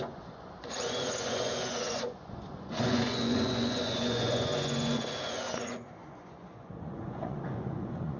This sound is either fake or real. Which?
fake